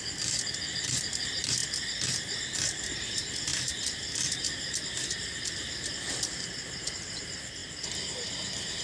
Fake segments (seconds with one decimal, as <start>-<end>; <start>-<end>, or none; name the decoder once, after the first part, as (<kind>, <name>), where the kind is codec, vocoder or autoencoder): none